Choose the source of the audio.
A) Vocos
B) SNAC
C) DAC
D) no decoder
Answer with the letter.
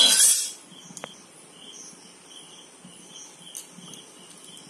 D